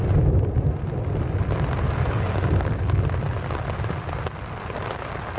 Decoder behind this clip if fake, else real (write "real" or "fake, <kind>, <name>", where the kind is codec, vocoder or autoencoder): real